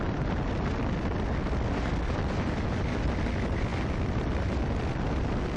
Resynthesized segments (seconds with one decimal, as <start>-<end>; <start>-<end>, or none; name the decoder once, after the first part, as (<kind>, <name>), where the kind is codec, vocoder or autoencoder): none